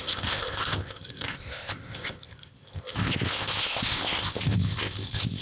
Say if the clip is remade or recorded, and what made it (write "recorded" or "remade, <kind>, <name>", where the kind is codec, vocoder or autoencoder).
remade, codec, ZipCodec